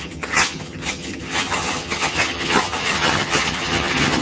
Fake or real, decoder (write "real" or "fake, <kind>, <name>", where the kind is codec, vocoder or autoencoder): fake, vocoder, HiFi-GAN